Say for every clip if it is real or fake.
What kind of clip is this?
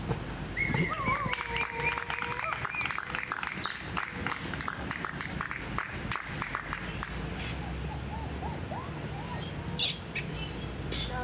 real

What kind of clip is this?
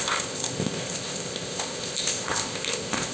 fake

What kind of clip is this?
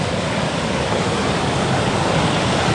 fake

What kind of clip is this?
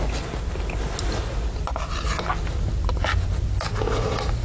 real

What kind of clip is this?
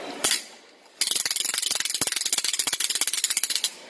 real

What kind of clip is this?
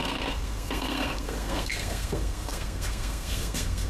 fake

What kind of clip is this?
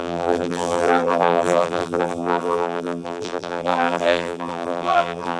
fake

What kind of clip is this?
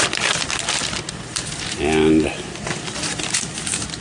real